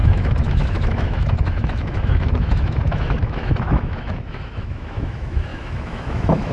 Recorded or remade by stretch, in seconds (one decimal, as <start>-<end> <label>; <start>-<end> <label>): 0.0-6.5 remade